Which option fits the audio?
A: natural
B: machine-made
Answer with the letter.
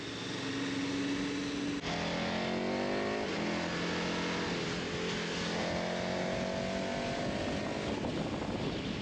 A